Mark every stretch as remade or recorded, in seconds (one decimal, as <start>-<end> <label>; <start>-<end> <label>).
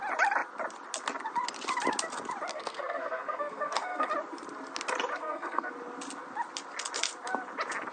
0.0-2.5 recorded; 2.5-4.1 remade; 4.1-5.1 recorded; 5.1-5.7 remade; 5.7-7.9 recorded